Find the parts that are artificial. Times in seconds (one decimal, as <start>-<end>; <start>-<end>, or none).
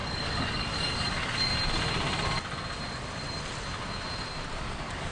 0.0-1.5; 4.6-5.1